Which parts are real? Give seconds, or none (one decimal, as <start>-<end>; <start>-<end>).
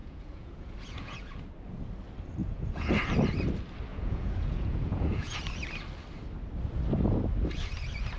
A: 1.4-2.4; 2.9-3.9; 5.4-8.2